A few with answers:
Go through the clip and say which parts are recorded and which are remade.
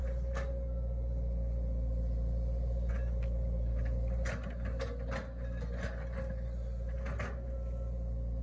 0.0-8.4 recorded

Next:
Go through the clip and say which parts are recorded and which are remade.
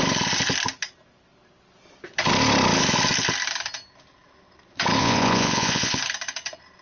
0.0-5.0 recorded; 5.0-6.0 remade; 6.0-6.8 recorded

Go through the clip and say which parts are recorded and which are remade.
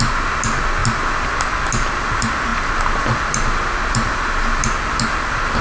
0.0-5.6 recorded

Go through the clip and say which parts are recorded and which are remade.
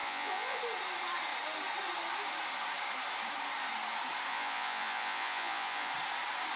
0.0-0.6 remade; 0.6-4.3 recorded; 4.3-5.9 remade; 5.9-6.6 recorded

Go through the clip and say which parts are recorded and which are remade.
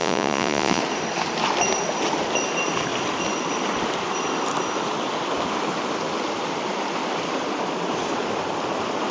0.0-0.8 remade; 0.8-9.1 recorded